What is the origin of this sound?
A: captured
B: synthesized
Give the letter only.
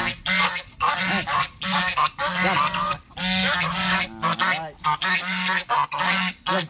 A